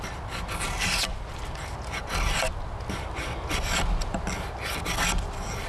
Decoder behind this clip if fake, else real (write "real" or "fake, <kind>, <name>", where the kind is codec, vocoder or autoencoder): real